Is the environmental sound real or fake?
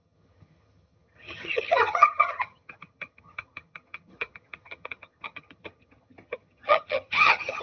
fake